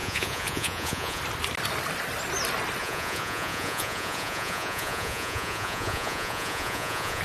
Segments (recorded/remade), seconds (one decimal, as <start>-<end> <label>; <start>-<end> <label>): 0.0-1.2 remade; 1.2-2.8 recorded; 2.8-7.2 remade